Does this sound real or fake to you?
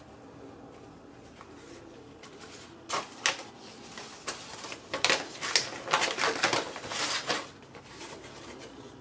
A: real